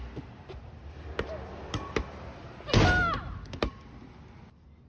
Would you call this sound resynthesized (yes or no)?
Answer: no